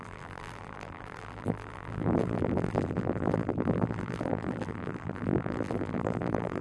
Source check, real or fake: fake